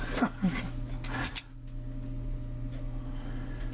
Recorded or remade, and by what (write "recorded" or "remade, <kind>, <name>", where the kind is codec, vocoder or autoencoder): recorded